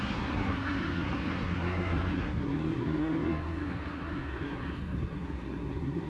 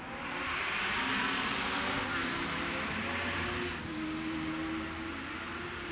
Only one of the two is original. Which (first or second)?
second